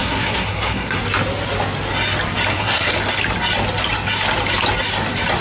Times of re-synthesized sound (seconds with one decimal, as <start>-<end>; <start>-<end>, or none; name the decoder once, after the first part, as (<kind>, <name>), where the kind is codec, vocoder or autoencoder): 0.0-1.0 (codec, SNAC); 2.5-2.9